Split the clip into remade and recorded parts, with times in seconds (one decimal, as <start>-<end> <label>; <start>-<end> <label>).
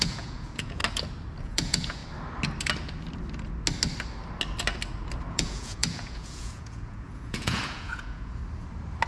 0.0-0.8 remade; 0.8-1.4 recorded; 1.4-2.0 remade; 2.0-5.3 recorded; 5.3-8.4 remade; 8.4-9.1 recorded